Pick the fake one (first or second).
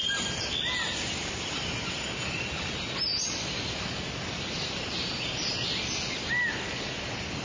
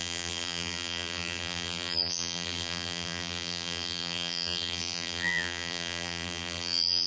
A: second